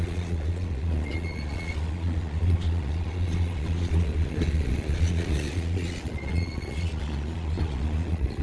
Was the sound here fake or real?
fake